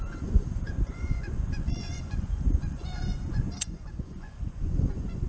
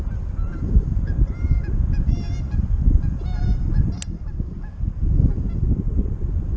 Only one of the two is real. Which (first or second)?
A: second